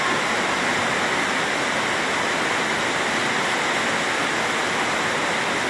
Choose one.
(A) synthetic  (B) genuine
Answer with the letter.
B